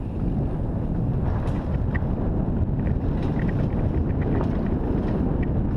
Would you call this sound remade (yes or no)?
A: no